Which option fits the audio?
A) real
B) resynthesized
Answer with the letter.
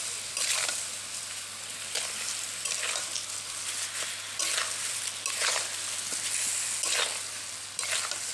A